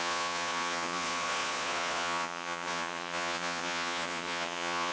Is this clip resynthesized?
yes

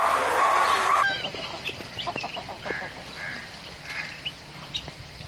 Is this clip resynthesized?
no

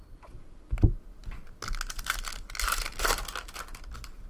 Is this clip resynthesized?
no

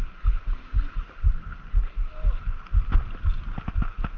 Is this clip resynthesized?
no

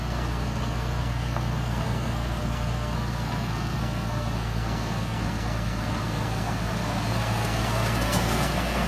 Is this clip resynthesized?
yes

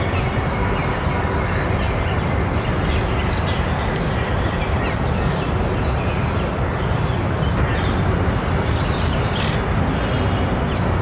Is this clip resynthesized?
no